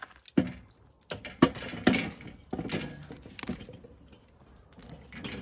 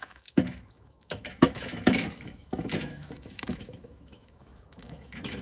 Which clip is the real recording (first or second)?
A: first